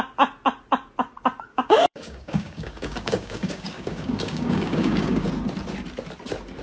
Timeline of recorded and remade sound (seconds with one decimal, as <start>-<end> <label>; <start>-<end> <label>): 0.0-1.5 recorded; 1.5-5.3 remade; 5.3-6.6 recorded